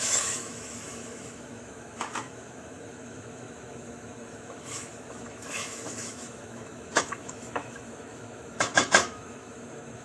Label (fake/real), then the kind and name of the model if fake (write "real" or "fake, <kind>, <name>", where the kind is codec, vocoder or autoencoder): fake, autoencoder, DAC-VAE